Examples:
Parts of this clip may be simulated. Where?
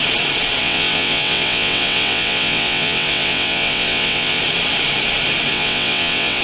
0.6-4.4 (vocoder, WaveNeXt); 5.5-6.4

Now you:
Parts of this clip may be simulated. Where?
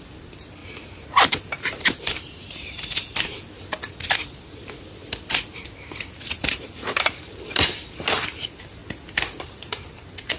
0.0-0.6 (vocoder, BigVGAN v2); 1.3-3.0; 6.4-8.8; 9.4-10.4